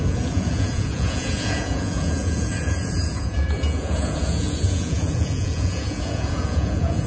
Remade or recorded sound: remade